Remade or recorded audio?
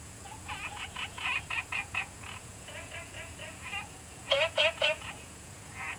remade